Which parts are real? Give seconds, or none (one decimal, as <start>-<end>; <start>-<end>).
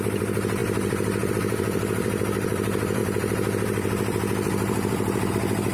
none